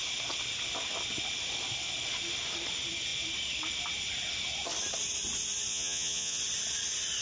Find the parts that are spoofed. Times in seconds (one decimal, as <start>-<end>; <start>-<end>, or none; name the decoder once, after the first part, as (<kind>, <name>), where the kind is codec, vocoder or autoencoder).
5.7-6.4 (vocoder, Vocos)